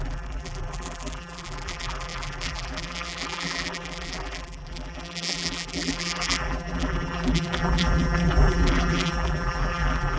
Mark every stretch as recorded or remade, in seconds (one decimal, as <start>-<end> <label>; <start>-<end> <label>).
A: 0.0-10.2 remade

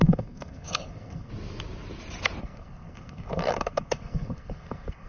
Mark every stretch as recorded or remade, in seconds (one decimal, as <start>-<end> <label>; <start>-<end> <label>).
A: 0.0-1.3 remade; 1.3-2.4 recorded; 2.4-5.1 remade

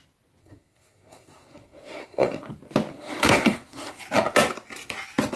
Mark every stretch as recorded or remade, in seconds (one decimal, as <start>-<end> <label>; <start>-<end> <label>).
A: 0.0-0.4 recorded; 0.4-2.5 remade; 2.5-2.9 recorded; 2.9-4.0 remade; 4.0-5.4 recorded

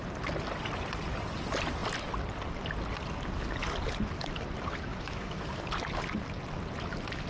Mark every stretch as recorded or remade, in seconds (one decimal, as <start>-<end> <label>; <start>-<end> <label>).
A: 0.0-4.9 recorded; 4.9-5.6 remade; 5.6-7.3 recorded

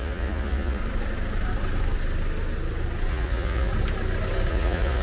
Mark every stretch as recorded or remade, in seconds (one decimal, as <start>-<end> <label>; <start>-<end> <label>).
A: 0.0-0.8 remade; 0.8-3.1 recorded; 3.1-3.7 remade; 3.7-4.5 recorded; 4.5-5.0 remade

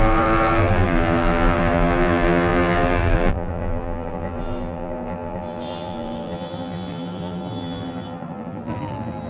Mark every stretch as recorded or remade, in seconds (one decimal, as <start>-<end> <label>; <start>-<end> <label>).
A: 0.0-9.3 remade

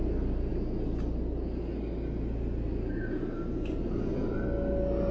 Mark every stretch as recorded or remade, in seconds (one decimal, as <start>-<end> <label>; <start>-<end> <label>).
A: 0.0-5.1 recorded